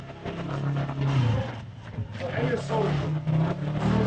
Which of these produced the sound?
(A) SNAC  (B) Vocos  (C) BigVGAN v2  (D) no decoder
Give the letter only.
D